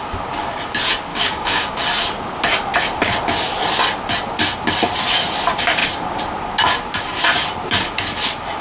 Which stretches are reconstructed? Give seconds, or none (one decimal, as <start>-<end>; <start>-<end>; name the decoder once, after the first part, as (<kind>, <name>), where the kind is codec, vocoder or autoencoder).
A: 1.1-1.7 (codec, DAC)